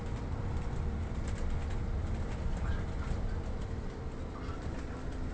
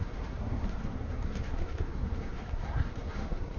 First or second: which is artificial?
second